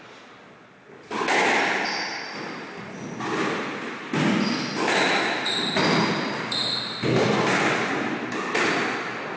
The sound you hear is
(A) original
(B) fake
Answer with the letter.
A